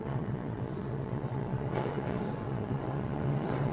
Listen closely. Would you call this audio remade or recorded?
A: remade